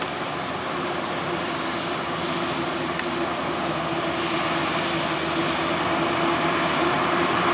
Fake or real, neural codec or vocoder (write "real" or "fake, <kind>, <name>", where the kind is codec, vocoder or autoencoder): real